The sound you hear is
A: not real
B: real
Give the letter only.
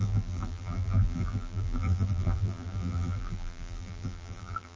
A